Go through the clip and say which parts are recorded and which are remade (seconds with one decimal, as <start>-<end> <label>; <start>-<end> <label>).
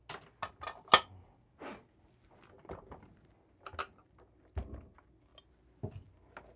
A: 0.0-6.6 recorded